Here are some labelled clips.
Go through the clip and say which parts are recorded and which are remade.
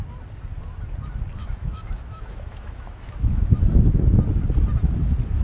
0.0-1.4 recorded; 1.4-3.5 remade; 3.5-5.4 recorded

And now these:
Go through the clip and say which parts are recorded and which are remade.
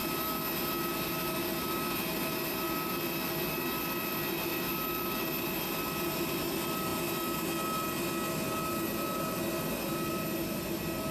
0.0-11.1 recorded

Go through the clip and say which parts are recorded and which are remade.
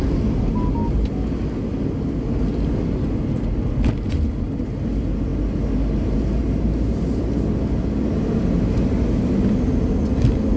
0.0-10.6 recorded